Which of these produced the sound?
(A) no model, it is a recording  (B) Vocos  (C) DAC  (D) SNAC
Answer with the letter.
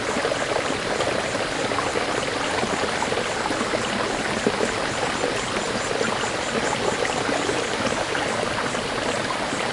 A